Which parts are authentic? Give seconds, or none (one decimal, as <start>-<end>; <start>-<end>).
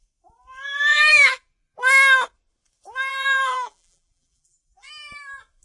0.0-0.9; 1.8-3.1; 4.9-5.6